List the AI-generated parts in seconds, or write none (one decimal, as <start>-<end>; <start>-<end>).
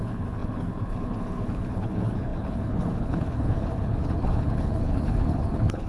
0.0-5.9